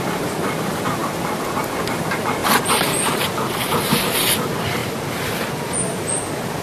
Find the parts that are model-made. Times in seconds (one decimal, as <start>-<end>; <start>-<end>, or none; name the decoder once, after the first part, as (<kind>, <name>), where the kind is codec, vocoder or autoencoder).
none